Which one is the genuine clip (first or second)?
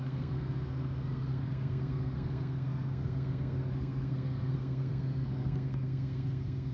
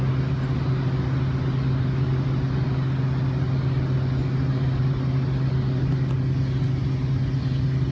second